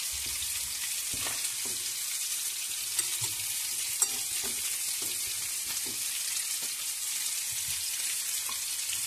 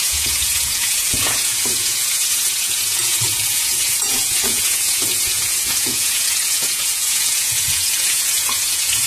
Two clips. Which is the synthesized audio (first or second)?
second